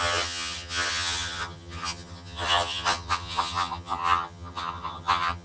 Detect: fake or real fake